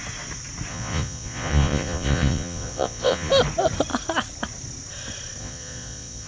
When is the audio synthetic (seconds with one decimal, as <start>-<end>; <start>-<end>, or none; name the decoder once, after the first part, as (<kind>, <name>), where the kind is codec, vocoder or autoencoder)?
0.7-3.3 (vocoder, Vocos); 5.4-6.3